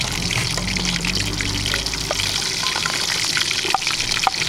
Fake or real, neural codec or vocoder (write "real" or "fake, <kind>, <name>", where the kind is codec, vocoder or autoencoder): real